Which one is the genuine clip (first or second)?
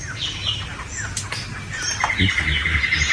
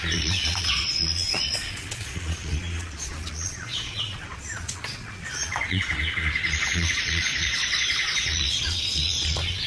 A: first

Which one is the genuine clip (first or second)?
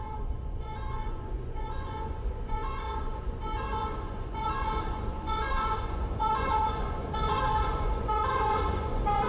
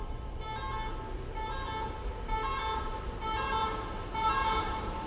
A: second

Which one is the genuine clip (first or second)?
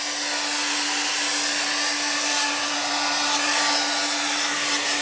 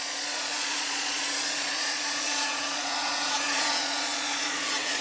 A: first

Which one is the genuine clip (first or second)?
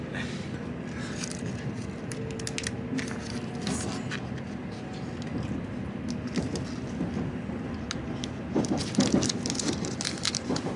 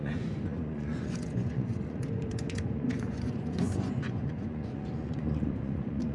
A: first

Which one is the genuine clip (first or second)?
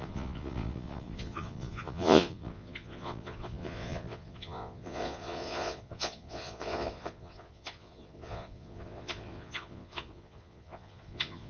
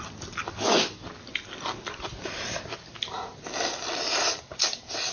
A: second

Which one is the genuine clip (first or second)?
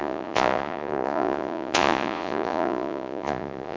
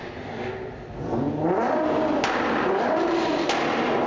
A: second